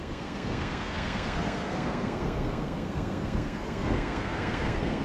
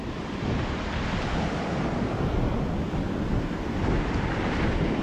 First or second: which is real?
second